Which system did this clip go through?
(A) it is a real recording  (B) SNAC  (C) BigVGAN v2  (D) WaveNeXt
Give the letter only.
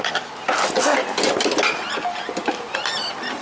A